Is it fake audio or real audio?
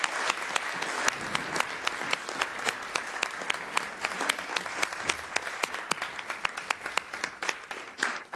real